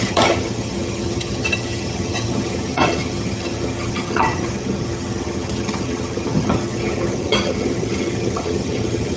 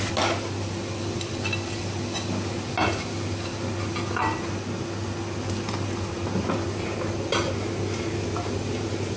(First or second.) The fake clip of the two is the first